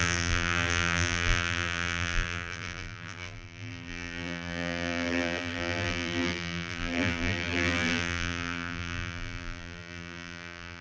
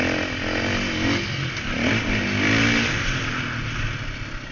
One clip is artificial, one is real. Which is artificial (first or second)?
first